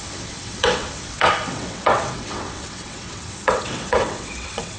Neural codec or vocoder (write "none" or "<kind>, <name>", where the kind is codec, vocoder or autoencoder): vocoder, WaveNeXt